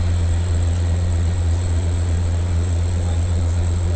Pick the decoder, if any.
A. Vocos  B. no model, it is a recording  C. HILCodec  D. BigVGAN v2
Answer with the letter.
A